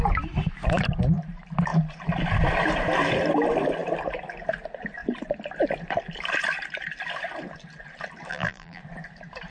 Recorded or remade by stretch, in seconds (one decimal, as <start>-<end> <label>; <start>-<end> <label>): 0.0-8.3 recorded; 8.3-8.8 remade; 8.8-9.5 recorded